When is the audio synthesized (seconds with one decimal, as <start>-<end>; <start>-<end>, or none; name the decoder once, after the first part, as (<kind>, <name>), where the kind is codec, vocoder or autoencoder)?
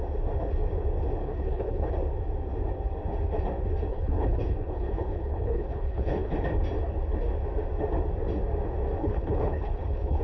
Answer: 1.2-1.9 (codec, HILCodec); 3.9-6.3; 9.0-10.2